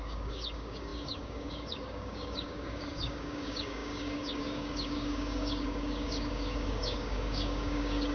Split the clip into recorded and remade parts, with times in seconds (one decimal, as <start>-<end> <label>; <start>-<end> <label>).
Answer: 0.0-8.1 remade